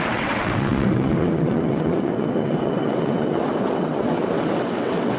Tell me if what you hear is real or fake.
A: fake